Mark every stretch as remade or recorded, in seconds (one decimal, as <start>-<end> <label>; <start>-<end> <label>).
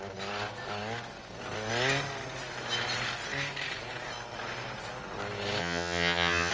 0.0-5.6 recorded; 5.6-6.5 remade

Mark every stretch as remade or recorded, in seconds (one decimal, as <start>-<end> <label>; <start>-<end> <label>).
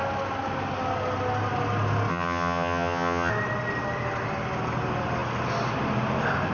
0.0-2.1 recorded; 2.1-3.3 remade; 3.3-6.5 recorded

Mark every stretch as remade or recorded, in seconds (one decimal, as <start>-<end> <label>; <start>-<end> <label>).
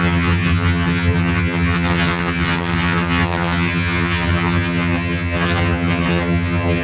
0.0-6.8 remade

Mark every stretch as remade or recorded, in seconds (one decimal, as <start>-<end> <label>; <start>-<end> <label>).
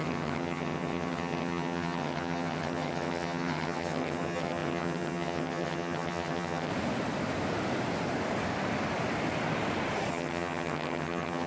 0.0-6.7 remade; 6.7-10.1 recorded; 10.1-11.5 remade